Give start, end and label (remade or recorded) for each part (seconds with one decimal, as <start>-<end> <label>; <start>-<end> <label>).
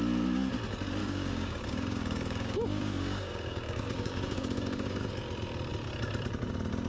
0.0-1.0 recorded; 1.0-5.1 remade; 5.1-6.9 recorded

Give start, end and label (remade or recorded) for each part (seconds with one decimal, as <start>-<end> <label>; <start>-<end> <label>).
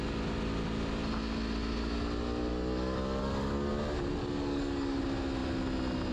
0.0-2.5 recorded; 2.5-3.7 remade; 3.7-4.2 recorded; 4.2-5.0 remade; 5.0-6.1 recorded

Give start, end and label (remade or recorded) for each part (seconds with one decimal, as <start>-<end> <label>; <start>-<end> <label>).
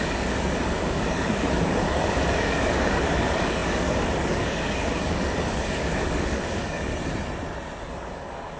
0.0-6.9 remade; 6.9-7.8 recorded; 7.8-8.6 remade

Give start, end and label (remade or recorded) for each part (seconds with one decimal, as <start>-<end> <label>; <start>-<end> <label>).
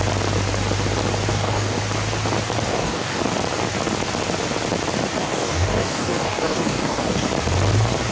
0.0-1.3 recorded; 1.3-1.8 remade; 1.8-2.7 recorded; 2.7-3.2 remade; 3.2-5.2 recorded; 5.2-7.3 remade; 7.3-8.1 recorded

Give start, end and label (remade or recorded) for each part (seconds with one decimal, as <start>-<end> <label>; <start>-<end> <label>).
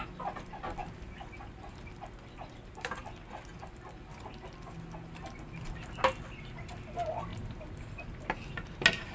0.0-9.1 recorded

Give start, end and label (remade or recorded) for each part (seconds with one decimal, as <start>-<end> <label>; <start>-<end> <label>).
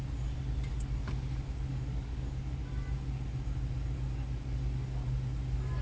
0.0-1.7 recorded; 1.7-2.7 remade; 2.7-5.8 recorded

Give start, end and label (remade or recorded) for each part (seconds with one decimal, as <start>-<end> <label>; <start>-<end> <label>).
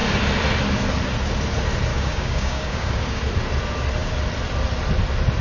0.0-1.9 recorded; 1.9-3.2 remade; 3.2-5.4 recorded